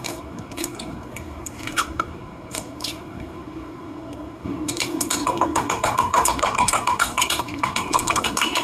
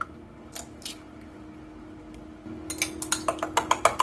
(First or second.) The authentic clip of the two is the second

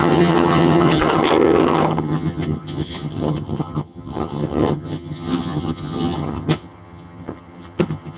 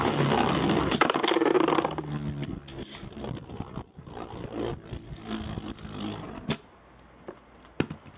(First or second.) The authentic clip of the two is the second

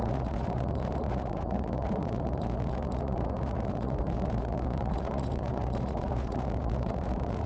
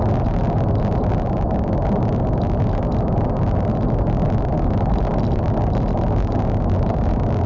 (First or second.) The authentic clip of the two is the second